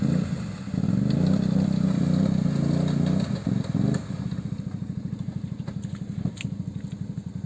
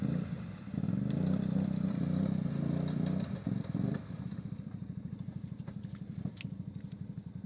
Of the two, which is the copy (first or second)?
second